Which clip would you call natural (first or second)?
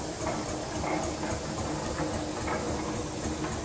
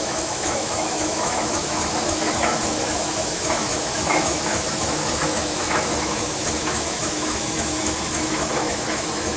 first